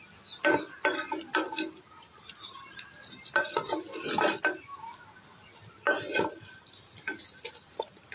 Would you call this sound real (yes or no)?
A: yes